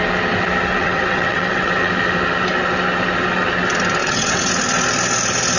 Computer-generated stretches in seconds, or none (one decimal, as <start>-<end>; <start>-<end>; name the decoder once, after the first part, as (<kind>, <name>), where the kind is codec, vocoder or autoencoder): 0.7-1.9 (vocoder, WaveNeXt); 4.0-4.5